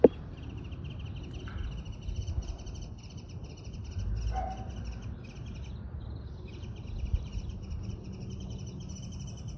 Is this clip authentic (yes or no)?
yes